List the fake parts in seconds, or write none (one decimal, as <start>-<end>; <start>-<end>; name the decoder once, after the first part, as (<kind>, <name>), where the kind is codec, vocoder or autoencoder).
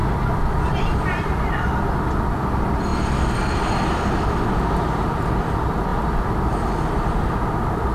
none